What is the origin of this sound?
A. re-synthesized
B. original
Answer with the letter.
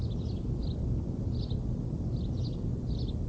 B